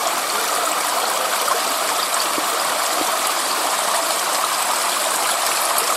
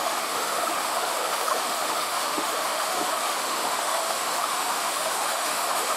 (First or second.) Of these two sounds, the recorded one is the first